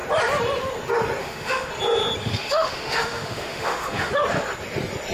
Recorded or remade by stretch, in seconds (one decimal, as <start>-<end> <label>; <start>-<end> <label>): 0.0-1.2 recorded; 1.2-1.7 remade; 1.7-2.2 recorded; 2.2-4.1 remade; 4.1-5.1 recorded